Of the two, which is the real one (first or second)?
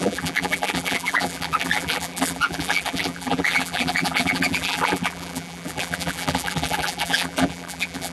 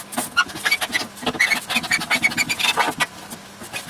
second